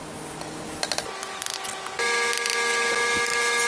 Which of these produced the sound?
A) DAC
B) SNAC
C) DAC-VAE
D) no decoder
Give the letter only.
D